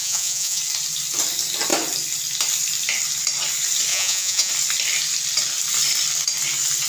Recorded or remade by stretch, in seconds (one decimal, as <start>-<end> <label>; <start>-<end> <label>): 0.0-0.6 remade; 0.6-3.9 recorded; 3.9-4.5 remade; 4.5-6.9 recorded